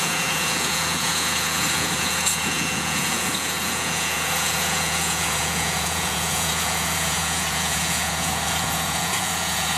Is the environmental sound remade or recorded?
remade